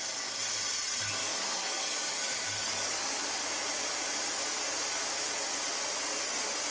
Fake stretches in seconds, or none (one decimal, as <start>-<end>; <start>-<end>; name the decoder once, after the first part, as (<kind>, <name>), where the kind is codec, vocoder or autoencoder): 1.2-3.2 (codec, DAC)